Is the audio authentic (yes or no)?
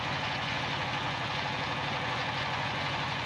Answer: no